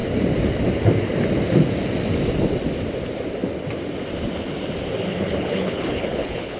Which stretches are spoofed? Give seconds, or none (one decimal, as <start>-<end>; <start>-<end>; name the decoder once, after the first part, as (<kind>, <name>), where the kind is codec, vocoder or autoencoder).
5.1-6.6 (codec, HILCodec)